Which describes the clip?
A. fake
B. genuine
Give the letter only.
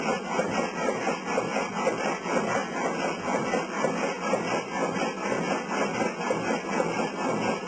B